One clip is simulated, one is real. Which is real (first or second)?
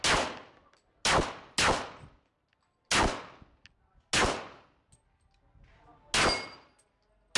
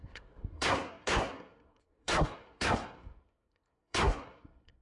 first